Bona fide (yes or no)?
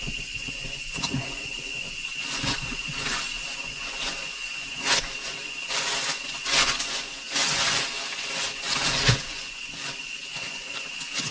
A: no